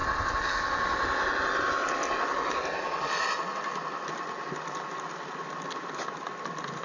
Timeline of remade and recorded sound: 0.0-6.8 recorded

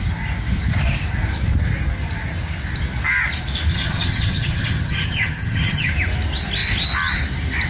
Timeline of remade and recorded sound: 0.0-3.7 recorded; 3.7-5.9 remade; 5.9-7.7 recorded

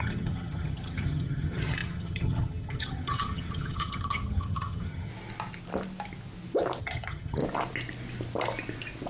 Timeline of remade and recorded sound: 0.0-5.1 remade; 5.1-6.8 recorded; 6.8-7.4 remade; 7.4-9.1 recorded

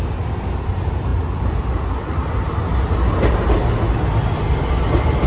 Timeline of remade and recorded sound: 0.0-5.3 recorded

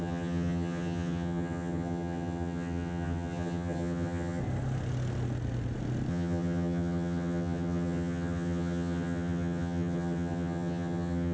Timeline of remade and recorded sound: 0.0-4.4 remade; 4.4-6.1 recorded; 6.1-11.3 remade